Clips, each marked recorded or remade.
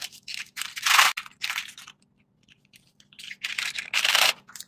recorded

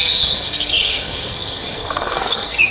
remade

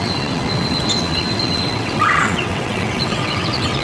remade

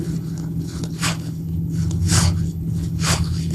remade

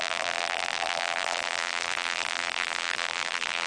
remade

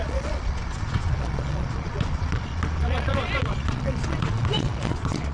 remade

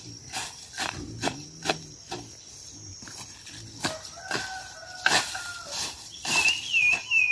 remade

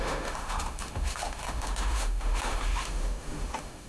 remade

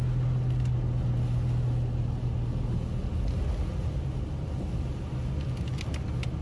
recorded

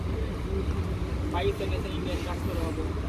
recorded